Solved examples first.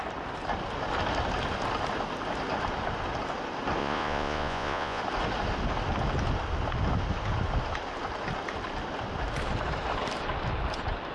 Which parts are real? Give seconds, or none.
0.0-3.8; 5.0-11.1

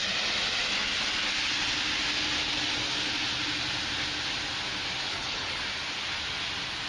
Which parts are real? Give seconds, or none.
0.0-5.1; 5.6-6.9